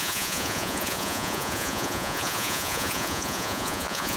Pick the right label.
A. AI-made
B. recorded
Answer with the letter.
A